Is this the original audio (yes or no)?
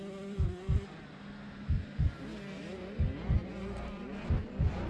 yes